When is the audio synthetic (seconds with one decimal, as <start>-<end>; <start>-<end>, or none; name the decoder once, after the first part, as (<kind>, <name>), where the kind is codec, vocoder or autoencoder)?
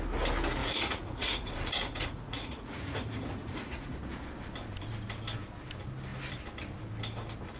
0.6-3.9 (vocoder, Vocos)